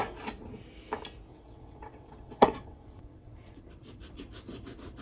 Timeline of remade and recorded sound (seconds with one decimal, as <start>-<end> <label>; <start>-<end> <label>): 0.0-1.3 recorded; 1.3-3.6 remade; 3.6-5.0 recorded

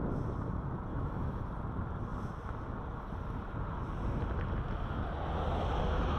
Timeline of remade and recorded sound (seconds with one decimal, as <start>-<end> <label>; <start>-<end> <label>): 0.0-0.9 recorded; 0.9-1.4 remade; 1.4-6.2 recorded

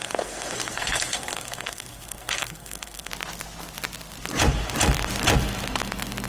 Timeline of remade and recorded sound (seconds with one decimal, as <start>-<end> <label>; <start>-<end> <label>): 0.0-3.1 remade; 3.1-6.3 recorded

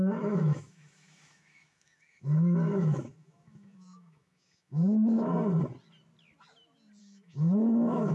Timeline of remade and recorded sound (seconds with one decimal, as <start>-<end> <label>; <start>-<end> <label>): 0.0-5.3 remade; 5.3-7.0 recorded; 7.0-8.1 remade

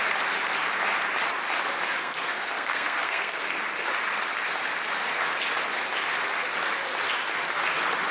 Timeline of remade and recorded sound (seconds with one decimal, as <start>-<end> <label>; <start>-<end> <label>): 0.0-2.0 recorded; 2.0-3.4 remade; 3.4-8.1 recorded

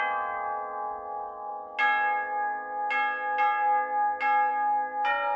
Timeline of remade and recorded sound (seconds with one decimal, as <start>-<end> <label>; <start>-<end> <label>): 0.0-5.4 recorded

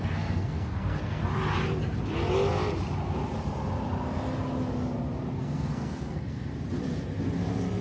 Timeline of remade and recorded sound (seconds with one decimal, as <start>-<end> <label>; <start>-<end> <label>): 0.0-1.2 remade; 1.2-5.4 recorded; 5.4-6.5 remade; 6.5-7.8 recorded